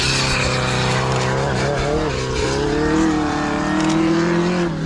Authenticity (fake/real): real